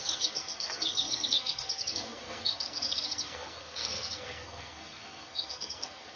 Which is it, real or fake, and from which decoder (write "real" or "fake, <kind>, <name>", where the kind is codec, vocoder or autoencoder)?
fake, codec, SNAC